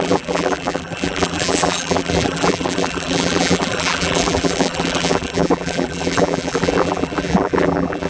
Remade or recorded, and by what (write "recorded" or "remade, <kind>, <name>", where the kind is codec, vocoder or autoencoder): remade, vocoder, BigVGAN v2